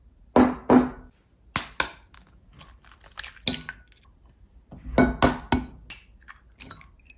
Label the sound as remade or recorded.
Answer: recorded